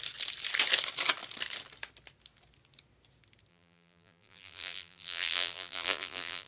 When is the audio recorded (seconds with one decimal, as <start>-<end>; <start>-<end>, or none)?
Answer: 0.0-3.5